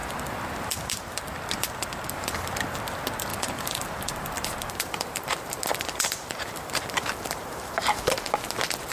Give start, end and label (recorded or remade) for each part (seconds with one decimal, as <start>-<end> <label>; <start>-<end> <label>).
0.0-1.2 remade; 1.2-3.3 recorded; 3.3-5.3 remade; 5.3-5.7 recorded; 5.7-8.0 remade; 8.0-8.9 recorded